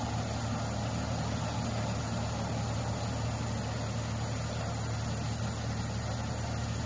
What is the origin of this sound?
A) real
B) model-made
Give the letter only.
A